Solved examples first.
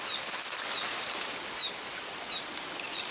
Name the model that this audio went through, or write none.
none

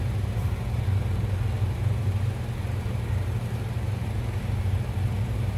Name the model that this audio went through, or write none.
vocoder, BigVGAN v2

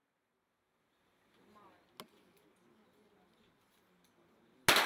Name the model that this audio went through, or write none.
none